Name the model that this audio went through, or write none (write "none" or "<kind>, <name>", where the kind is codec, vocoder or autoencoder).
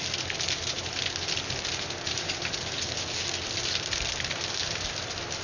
none